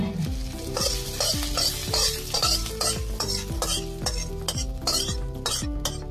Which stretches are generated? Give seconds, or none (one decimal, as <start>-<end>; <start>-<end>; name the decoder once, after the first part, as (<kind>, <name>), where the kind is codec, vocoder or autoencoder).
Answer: none